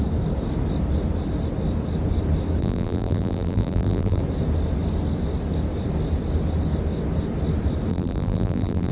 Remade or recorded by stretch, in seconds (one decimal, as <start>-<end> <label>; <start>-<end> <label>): 0.0-2.6 recorded; 2.6-4.2 remade; 4.2-7.9 recorded; 7.9-8.9 remade